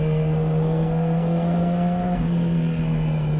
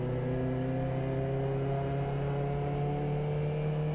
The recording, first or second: second